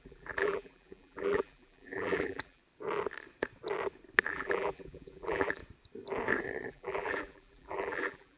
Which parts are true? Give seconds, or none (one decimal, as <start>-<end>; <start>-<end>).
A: 2.6-4.2; 5.6-6.7